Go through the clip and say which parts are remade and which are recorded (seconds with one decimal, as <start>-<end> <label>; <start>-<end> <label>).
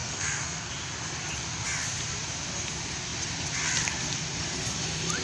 0.0-0.7 remade; 0.7-5.2 recorded